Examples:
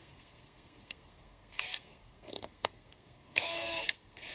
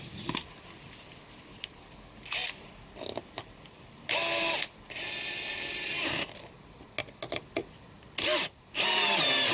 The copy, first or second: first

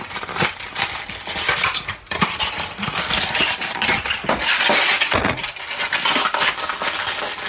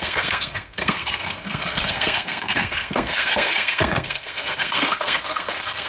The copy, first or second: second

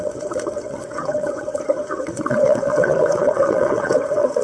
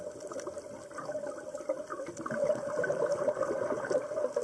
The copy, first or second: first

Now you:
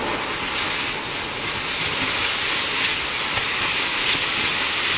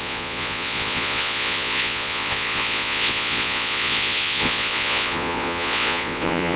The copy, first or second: second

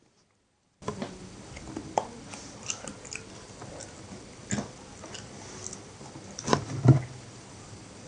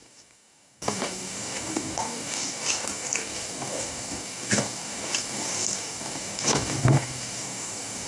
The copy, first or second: second